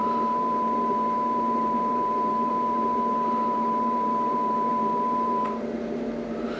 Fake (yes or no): yes